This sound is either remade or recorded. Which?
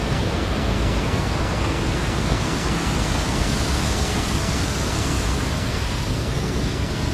remade